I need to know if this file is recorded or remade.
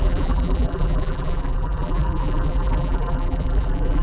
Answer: remade